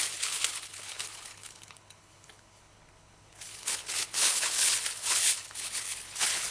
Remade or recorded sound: remade